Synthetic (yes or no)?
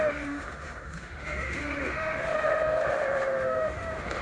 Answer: yes